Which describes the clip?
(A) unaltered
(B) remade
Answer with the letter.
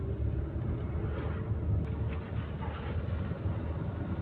A